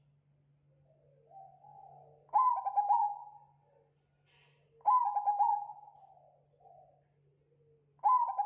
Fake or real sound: real